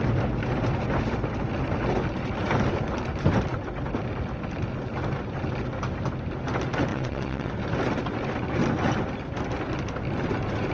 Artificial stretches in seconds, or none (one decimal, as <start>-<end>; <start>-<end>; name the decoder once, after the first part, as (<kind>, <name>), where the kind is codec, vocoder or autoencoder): 6.9-7.5 (vocoder, WaveNeXt)